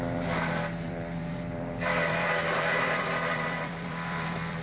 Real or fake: fake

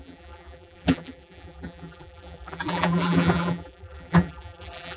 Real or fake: fake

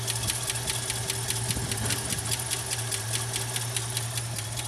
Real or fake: real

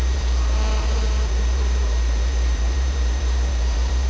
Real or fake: fake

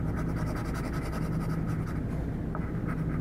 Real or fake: real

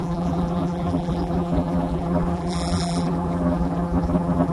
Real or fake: fake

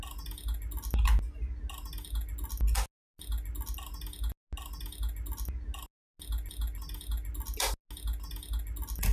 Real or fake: real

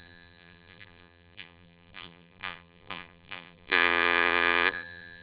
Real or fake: fake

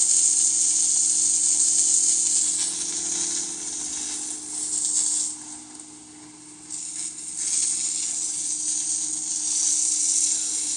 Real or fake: real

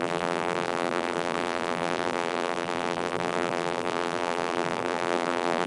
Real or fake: fake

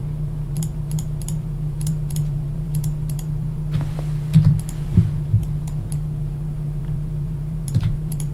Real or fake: fake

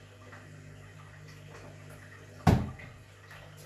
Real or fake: real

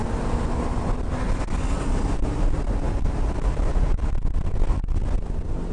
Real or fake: real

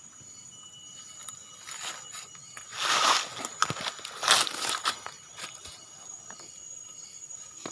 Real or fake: real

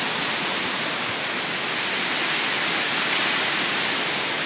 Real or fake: real